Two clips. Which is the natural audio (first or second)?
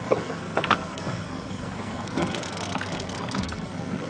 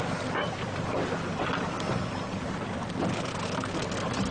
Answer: second